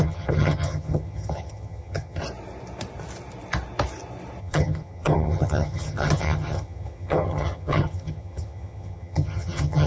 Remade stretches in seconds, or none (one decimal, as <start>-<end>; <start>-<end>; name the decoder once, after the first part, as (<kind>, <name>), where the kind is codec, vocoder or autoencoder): 0.0-2.2 (vocoder, HiFi-GAN); 4.4-9.9

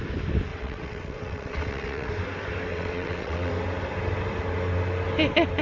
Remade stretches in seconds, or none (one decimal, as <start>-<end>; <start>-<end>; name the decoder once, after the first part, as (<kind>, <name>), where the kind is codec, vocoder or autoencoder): 0.5-2.1 (vocoder, WaveNeXt); 2.7-3.5

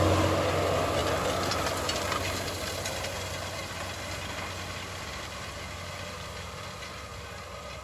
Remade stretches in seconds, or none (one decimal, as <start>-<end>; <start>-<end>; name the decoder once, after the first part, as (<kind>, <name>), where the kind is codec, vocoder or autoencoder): none

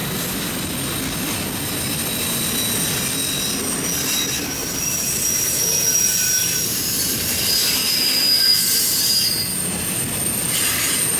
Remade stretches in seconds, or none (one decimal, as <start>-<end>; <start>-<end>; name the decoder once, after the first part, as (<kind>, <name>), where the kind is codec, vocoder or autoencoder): 4.6-7.4 (vocoder, BigVGAN v2)

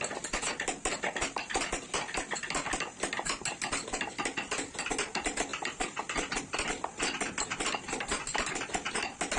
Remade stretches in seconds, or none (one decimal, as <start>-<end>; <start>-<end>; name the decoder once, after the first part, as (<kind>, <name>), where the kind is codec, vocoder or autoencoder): none

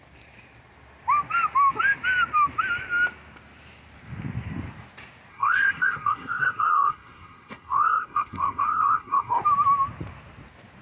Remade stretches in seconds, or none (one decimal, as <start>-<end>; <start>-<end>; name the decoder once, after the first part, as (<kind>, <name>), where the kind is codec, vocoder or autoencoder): 5.3-9.4 (codec, SNAC)